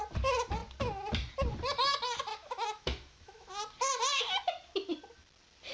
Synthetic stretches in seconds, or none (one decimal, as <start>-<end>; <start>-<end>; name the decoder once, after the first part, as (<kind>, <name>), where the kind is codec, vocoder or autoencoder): 2.3-3.5 (autoencoder, DAC-VAE)